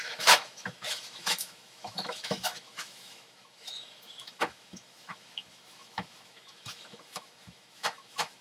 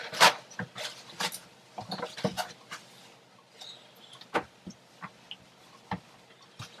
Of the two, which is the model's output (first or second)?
first